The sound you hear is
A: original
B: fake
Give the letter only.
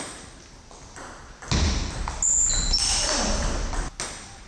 A